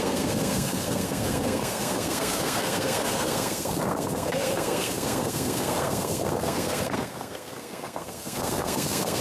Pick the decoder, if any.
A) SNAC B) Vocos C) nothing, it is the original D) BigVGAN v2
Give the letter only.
A